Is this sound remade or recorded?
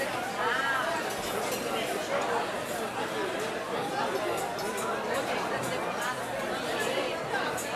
recorded